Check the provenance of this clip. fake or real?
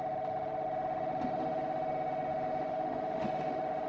fake